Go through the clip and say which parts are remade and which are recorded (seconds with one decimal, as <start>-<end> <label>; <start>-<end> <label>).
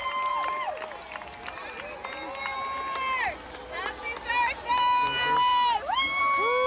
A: 0.0-6.7 recorded